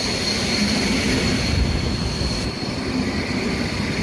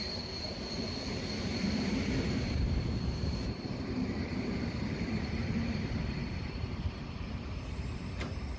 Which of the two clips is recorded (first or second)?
first